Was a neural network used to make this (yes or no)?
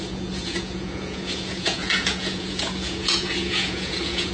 yes